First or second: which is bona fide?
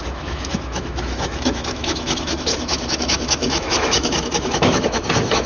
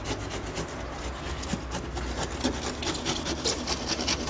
second